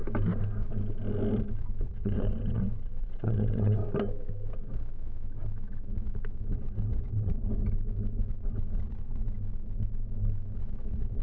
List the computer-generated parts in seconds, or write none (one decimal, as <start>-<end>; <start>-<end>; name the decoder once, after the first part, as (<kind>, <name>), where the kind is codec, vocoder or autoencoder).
1.8-3.8 (vocoder, WaveNeXt); 6.5-7.4; 8.4-9.3; 10.6-11.2